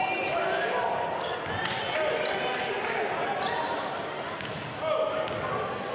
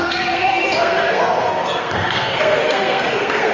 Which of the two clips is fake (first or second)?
second